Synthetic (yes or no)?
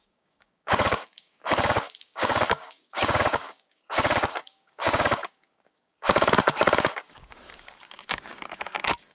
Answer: yes